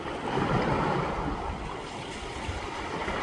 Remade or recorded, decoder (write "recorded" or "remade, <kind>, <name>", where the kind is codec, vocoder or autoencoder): recorded